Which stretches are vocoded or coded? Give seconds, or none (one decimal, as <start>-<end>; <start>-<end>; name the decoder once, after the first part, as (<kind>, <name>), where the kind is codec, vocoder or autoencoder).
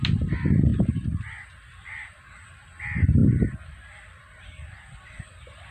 3.2-5.2 (vocoder, BigVGAN v2)